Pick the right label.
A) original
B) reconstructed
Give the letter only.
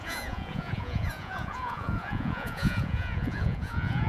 B